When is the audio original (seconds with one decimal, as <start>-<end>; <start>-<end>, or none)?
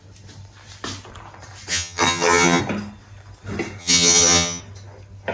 0.0-1.7; 2.6-3.8; 4.6-5.3